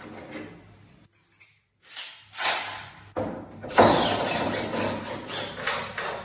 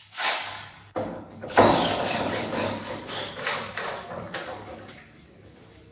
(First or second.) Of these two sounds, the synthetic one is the second